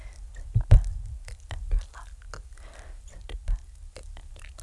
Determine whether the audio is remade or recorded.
recorded